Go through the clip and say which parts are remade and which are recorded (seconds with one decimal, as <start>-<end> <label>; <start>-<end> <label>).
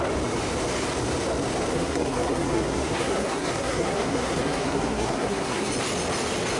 0.0-1.7 recorded; 1.7-5.7 remade; 5.7-6.6 recorded